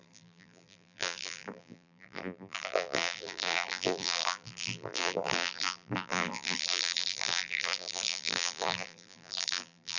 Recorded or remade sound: remade